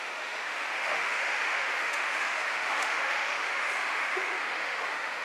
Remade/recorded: remade